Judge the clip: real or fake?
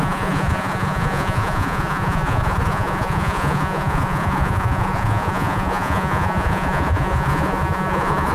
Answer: fake